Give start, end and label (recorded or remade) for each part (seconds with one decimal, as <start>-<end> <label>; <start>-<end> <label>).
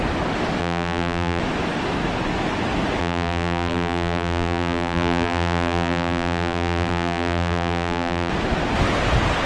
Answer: 0.0-0.6 recorded; 0.6-1.4 remade; 1.4-3.0 recorded; 3.0-8.3 remade; 8.3-9.5 recorded